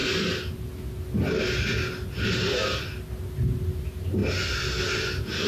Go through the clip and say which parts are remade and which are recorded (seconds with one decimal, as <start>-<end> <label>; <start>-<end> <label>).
0.0-5.5 recorded